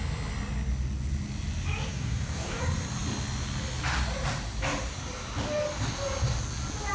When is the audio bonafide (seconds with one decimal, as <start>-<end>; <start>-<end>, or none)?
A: 0.0-1.9; 2.6-6.9